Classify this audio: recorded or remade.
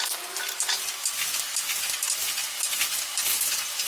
recorded